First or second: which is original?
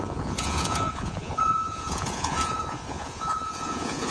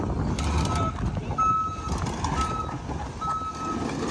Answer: second